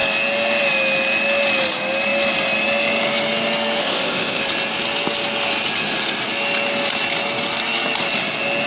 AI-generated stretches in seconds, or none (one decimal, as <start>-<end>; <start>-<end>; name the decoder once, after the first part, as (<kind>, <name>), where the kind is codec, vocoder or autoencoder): 3.8-4.4 (codec, ZipCodec)